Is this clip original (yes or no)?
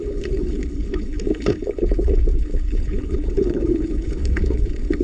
no